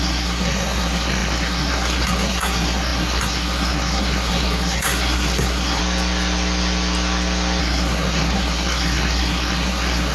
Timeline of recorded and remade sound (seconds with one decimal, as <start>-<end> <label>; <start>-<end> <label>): 0.0-5.8 remade; 5.8-7.6 recorded; 7.6-10.1 remade